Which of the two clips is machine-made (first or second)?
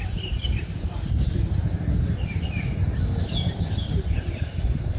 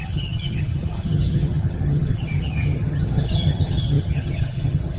second